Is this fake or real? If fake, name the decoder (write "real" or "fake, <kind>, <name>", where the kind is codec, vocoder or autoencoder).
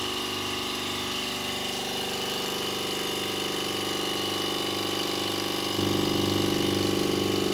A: real